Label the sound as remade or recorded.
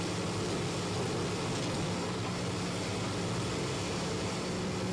recorded